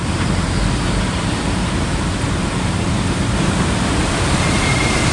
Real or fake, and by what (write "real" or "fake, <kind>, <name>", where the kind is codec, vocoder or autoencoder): fake, vocoder, BigVGAN v2